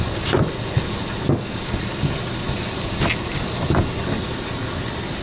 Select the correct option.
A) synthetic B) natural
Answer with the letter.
B